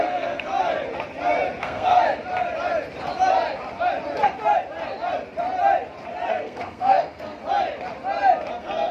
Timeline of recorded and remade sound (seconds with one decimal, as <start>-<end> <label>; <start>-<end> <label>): 0.0-0.5 remade; 0.5-1.6 recorded; 1.6-2.0 remade; 2.0-6.3 recorded; 6.3-7.4 remade; 7.4-8.5 recorded; 8.5-8.9 remade

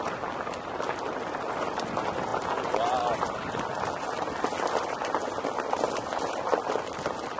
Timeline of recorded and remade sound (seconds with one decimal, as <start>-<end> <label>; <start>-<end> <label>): 0.0-7.4 recorded

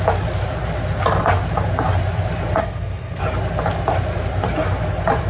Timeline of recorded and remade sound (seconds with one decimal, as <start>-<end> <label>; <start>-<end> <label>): 0.0-2.6 recorded; 2.6-3.2 remade; 3.2-5.3 recorded

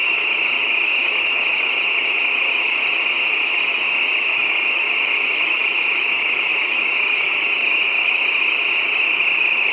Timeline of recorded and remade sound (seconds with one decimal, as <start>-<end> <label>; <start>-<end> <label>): 0.0-9.7 remade

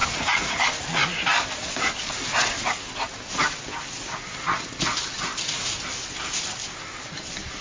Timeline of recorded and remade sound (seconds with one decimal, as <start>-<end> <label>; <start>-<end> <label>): 0.0-0.6 remade; 0.6-7.6 recorded